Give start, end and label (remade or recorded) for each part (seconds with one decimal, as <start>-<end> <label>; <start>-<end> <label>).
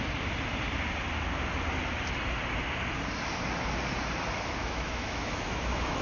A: 0.0-4.6 recorded; 4.6-6.0 remade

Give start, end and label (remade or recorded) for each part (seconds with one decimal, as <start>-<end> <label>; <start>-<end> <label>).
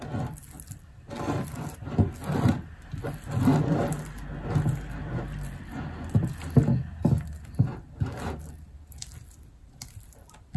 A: 0.0-10.6 recorded